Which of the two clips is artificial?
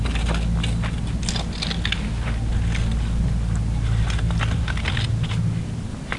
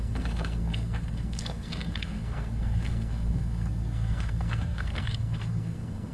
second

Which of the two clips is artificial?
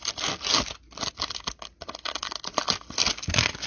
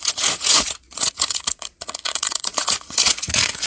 second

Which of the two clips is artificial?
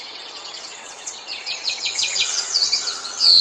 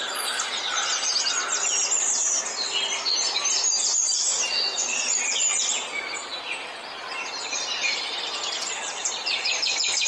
first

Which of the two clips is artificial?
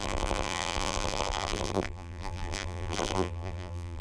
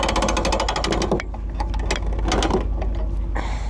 first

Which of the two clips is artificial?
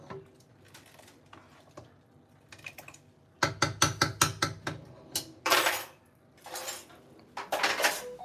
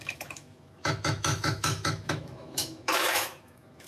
second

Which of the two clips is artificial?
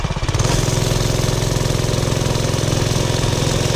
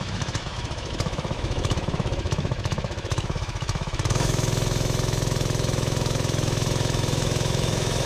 second